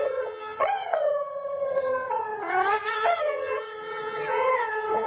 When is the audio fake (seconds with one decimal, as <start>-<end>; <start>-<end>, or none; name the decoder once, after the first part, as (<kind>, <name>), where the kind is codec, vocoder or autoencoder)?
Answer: 0.0-5.1 (vocoder, HiFi-GAN)